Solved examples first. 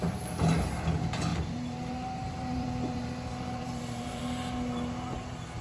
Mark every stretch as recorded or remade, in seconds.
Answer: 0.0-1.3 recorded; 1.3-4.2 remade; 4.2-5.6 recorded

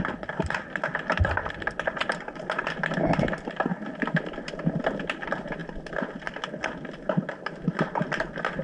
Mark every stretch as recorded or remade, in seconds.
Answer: 0.0-2.0 remade; 2.0-2.7 recorded; 2.7-3.7 remade; 3.7-4.8 recorded; 4.8-8.6 remade

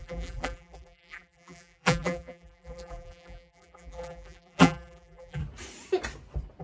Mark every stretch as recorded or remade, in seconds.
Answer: 0.0-5.4 remade; 5.4-6.6 recorded

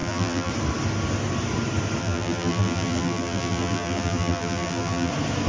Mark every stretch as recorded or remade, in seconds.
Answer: 0.0-0.5 remade; 0.5-2.0 recorded; 2.0-5.1 remade; 5.1-5.5 recorded